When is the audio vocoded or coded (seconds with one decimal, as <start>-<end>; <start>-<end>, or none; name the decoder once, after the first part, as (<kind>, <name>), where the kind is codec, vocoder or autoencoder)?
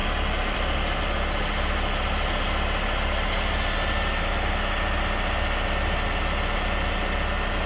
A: 0.0-1.0 (vocoder, BigVGAN v2)